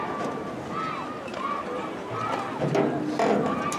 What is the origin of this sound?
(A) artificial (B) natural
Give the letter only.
B